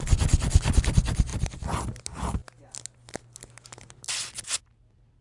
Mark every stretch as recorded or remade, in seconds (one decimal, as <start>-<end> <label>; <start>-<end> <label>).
0.0-5.2 recorded